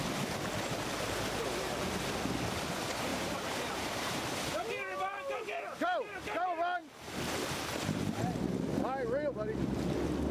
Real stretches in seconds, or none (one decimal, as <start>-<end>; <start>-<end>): 0.0-3.1; 4.3-10.3